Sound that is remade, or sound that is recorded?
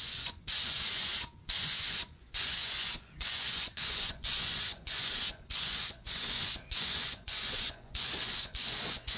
remade